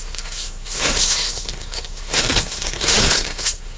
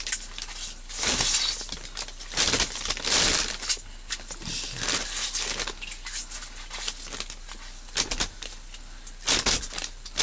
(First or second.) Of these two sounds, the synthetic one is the first